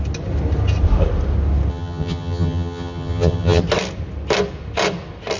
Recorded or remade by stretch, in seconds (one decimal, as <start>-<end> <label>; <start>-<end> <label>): 0.0-1.7 recorded; 1.7-3.6 remade; 3.6-5.4 recorded